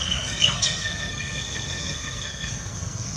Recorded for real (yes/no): no